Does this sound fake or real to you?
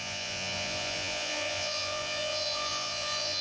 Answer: fake